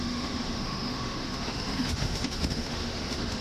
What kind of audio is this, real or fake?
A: fake